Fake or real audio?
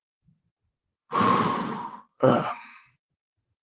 fake